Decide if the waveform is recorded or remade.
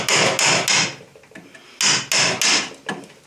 recorded